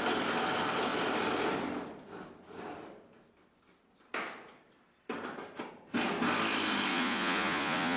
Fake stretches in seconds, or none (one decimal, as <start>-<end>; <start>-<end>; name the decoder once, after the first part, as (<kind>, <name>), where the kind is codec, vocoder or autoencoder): 6.9-8.0 (vocoder, Vocos)